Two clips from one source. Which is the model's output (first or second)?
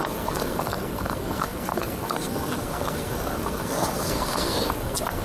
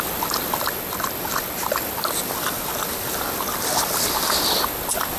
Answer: first